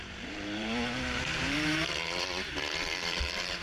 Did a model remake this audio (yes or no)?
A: yes